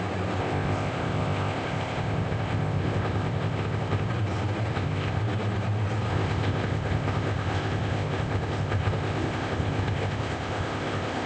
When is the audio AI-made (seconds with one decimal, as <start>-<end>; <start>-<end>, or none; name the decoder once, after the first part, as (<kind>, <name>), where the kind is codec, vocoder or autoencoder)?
0.4-4.1 (codec, ZipCodec); 4.7-5.2; 6.1-11.3